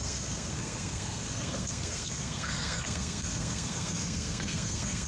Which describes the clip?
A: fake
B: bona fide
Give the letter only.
A